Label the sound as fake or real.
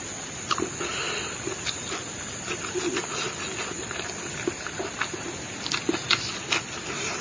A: real